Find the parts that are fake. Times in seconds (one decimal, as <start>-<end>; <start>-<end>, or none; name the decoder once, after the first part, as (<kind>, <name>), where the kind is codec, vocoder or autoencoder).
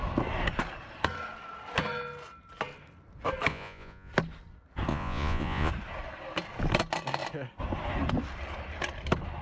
3.5-4.1 (vocoder, Vocos); 4.9-5.7